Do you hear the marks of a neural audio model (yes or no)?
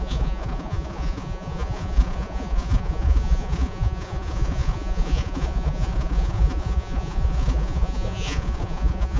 yes